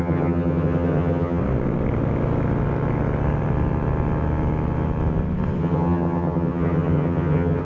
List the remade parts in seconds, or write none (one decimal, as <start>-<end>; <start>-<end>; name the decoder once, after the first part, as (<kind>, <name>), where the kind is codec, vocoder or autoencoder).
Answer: 0.0-1.4 (vocoder, HiFi-GAN); 5.6-7.6